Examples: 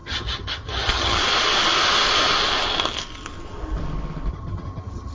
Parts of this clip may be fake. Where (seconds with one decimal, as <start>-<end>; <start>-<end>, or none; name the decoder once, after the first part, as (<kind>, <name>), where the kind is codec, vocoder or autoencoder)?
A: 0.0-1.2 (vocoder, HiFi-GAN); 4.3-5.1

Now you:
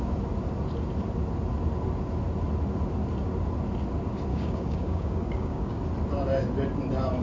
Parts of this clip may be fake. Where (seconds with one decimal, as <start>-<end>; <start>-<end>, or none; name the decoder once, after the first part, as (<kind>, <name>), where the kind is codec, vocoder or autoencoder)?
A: 4.3-5.8 (codec, DAC)

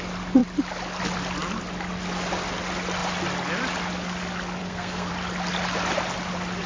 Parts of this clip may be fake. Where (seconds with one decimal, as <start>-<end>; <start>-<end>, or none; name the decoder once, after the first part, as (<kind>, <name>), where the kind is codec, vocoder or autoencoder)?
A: 4.6-5.1 (codec, SNAC)

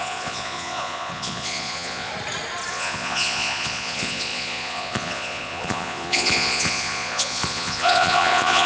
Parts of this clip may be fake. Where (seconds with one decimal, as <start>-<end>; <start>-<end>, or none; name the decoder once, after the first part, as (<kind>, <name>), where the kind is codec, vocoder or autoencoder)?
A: 0.0-2.1 (vocoder, Vocos); 2.7-8.7